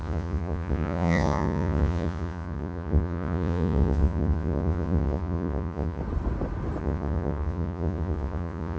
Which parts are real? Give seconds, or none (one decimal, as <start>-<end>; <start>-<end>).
6.0-6.8